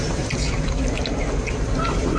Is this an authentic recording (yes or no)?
yes